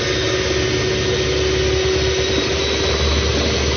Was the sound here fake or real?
real